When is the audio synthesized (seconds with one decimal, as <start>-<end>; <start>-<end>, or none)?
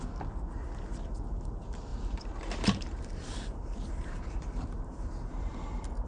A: 1.9-5.6